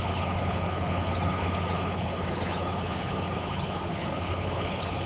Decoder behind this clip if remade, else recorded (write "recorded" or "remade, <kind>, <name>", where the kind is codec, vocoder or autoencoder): remade, codec, HILCodec